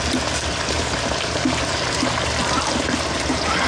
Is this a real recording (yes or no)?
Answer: yes